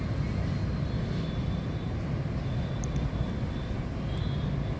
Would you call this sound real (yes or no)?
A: yes